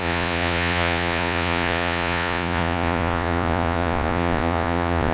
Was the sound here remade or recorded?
remade